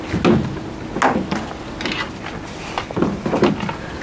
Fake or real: real